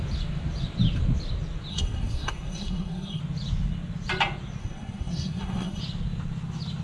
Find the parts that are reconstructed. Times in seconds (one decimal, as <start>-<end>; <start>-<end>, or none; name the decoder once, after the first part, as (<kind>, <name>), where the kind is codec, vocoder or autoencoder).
1.7-3.2 (codec, SNAC); 4.6-5.8